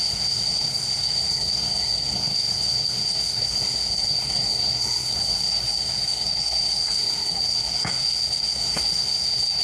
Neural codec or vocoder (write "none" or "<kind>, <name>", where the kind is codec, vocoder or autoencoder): codec, SNAC